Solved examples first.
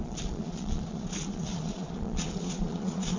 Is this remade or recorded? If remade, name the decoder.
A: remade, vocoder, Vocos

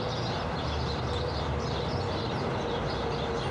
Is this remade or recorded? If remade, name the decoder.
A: recorded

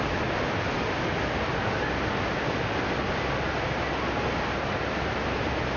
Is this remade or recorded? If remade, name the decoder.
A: recorded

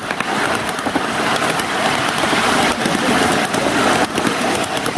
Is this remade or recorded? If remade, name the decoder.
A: recorded